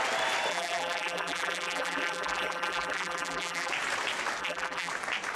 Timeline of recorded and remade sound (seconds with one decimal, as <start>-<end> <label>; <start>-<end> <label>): 0.0-0.5 recorded; 0.5-3.7 remade; 3.7-4.4 recorded; 4.4-4.9 remade; 4.9-5.4 recorded